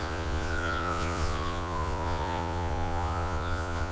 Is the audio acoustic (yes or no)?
no